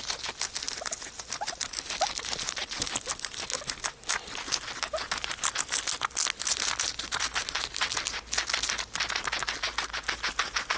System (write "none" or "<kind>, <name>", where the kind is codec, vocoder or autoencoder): none